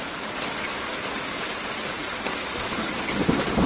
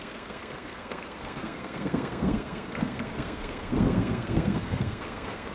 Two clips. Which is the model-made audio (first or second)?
second